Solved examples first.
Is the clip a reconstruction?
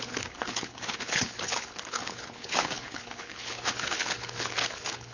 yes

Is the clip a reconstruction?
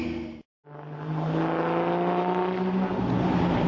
no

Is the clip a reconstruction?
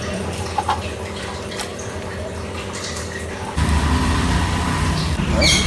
no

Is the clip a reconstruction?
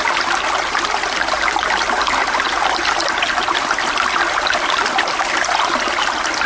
no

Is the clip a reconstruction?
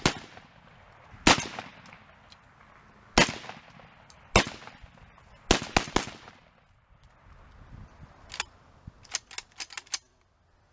no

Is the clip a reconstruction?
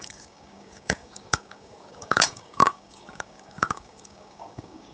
yes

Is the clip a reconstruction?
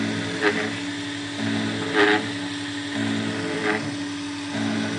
no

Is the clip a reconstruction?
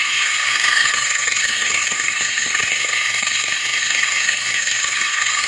yes